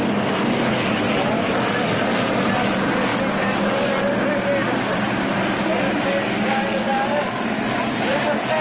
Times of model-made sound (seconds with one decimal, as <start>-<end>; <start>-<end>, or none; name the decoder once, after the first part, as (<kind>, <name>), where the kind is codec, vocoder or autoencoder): none